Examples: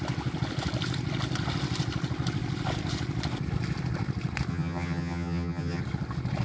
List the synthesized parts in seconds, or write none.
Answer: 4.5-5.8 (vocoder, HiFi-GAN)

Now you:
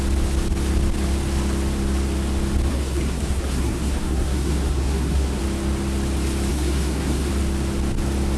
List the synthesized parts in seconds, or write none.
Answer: 2.7-5.4 (codec, SNAC); 6.5-7.3

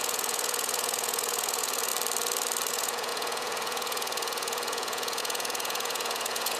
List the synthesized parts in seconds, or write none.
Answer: 0.0-1.9 (vocoder, Vocos); 2.7-6.6